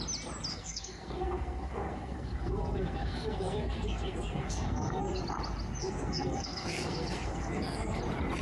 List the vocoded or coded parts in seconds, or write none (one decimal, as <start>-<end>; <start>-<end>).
0.5-5.2; 5.8-8.0